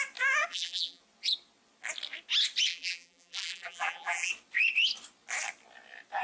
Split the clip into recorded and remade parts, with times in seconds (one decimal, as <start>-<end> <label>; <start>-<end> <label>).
0.0-0.5 recorded; 0.5-1.0 remade; 1.0-2.7 recorded; 2.7-4.3 remade; 4.3-6.2 recorded